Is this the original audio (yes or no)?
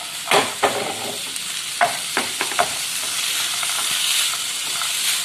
no